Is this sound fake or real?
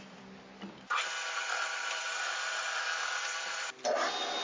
real